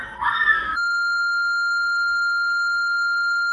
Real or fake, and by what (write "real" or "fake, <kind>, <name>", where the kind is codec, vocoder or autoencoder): fake, codec, DAC